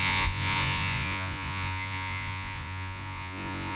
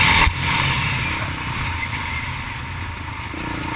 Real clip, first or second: second